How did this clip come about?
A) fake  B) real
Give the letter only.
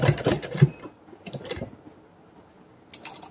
B